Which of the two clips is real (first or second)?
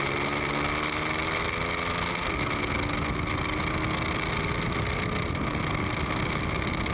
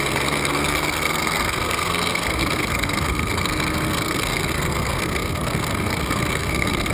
first